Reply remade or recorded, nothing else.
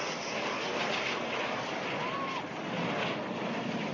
recorded